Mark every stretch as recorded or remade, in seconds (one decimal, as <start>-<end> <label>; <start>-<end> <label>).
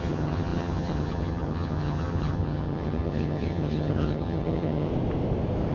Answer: 0.0-4.9 remade; 4.9-5.7 recorded